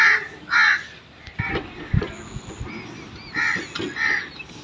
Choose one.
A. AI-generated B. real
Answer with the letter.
B